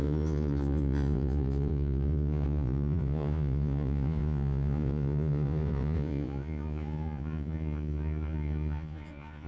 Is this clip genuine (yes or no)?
no